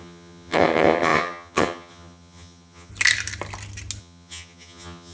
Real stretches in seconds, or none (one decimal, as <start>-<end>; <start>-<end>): 2.9-4.0

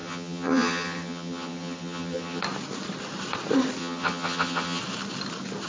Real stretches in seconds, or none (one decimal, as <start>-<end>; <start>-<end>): 2.4-3.8; 4.8-5.7

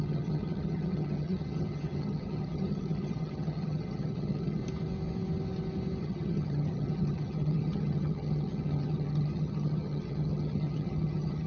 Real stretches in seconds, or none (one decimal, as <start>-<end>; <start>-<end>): 4.6-6.0

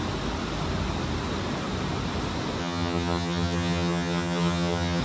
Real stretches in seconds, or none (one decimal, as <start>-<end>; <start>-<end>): 0.0-2.6

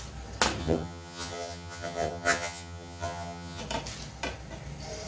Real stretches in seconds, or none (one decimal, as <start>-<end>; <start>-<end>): 0.0-0.6; 3.6-5.1

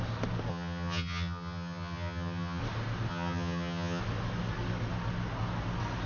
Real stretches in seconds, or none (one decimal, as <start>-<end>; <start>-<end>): 0.0-0.5; 2.6-3.1; 4.0-6.1